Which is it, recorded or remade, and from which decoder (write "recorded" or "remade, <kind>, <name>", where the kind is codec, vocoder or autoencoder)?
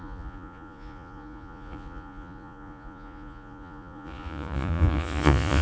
remade, vocoder, Vocos